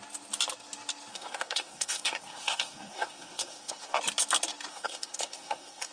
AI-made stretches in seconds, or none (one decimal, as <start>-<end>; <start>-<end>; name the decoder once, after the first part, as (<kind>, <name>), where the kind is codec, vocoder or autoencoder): 1.1-4.0 (codec, SNAC); 4.7-5.9